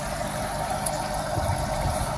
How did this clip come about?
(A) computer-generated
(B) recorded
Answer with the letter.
B